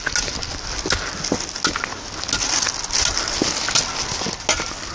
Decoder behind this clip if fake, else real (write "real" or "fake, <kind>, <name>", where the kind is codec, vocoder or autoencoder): real